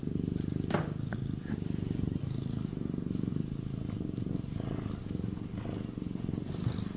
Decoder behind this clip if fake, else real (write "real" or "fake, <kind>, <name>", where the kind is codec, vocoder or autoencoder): real